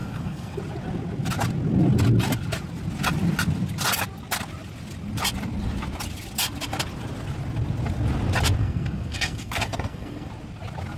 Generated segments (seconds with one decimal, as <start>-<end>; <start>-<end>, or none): 0.0-0.6; 8.6-10.3